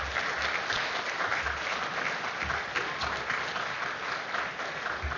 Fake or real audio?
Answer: real